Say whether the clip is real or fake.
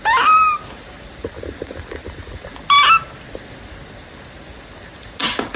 real